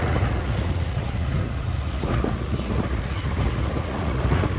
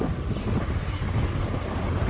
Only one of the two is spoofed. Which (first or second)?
first